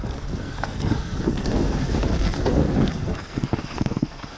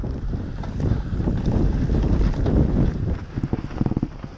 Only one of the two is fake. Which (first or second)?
first